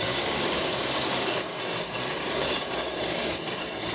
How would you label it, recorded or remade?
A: remade